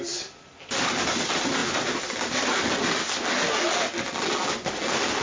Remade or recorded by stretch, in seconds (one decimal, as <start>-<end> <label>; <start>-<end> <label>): 0.0-5.2 recorded